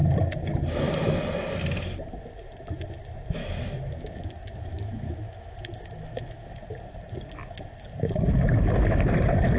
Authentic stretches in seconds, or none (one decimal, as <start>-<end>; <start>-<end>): 0.0-3.4; 6.6-9.6